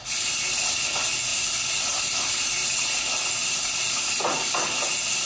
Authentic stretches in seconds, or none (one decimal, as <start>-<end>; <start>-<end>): 0.0-5.3